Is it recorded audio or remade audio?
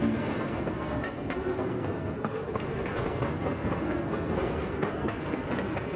remade